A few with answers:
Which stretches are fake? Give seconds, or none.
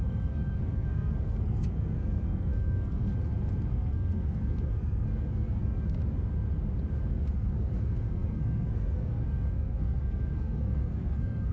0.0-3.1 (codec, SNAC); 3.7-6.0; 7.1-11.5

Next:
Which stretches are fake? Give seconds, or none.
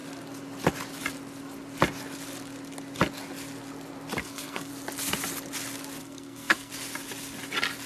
4.2-4.7 (codec, SNAC); 6.0-6.7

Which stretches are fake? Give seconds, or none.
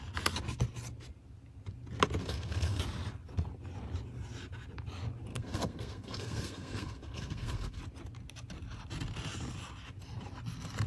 2.2-2.8 (codec, SNAC); 5.3-7.8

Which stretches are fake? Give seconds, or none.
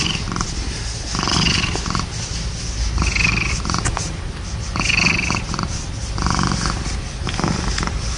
none